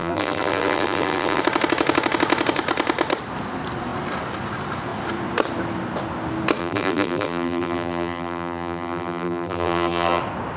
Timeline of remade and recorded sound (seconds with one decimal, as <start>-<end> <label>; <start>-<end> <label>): 0.0-1.4 remade; 1.4-6.6 recorded; 6.6-10.2 remade; 10.2-10.6 recorded